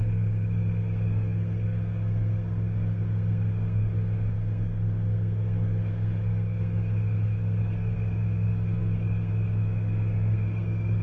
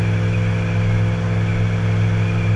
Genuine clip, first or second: second